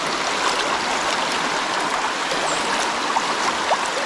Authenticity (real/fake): real